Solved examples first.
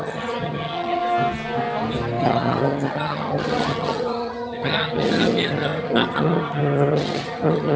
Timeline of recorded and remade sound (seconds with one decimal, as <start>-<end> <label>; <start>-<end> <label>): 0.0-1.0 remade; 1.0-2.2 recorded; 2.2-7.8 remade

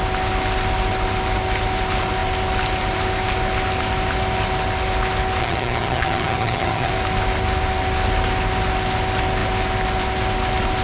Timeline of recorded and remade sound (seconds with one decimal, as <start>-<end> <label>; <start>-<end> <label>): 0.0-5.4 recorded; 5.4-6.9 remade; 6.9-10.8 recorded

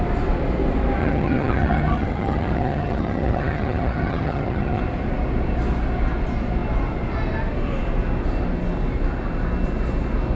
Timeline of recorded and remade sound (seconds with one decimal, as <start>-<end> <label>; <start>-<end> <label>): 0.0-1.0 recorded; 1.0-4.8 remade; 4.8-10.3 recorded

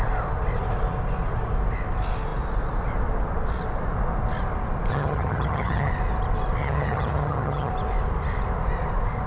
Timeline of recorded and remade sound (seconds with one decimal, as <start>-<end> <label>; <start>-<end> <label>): 0.0-4.9 recorded; 4.9-5.9 remade; 5.9-6.6 recorded; 6.6-7.7 remade; 7.7-9.3 recorded